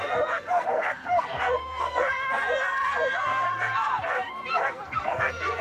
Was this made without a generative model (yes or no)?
no